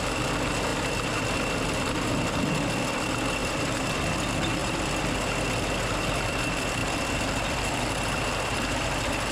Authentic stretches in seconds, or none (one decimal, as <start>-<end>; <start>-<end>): 0.0-6.8